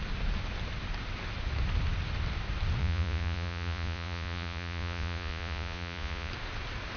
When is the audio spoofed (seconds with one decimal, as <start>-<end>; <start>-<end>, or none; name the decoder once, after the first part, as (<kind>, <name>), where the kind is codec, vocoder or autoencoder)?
2.8-6.3 (vocoder, Vocos)